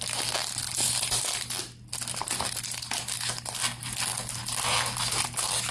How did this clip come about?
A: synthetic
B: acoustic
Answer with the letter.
B